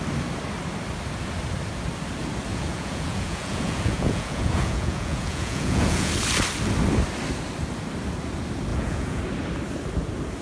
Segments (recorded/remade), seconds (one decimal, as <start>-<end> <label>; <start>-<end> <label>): 0.0-2.5 recorded; 2.5-6.1 remade; 6.1-8.7 recorded; 8.7-9.2 remade; 9.2-10.4 recorded